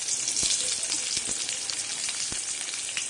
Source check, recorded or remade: recorded